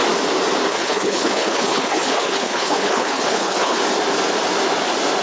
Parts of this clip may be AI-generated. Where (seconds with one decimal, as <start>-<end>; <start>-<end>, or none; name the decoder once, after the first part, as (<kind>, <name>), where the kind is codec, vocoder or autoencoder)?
0.7-3.8 (codec, HILCodec)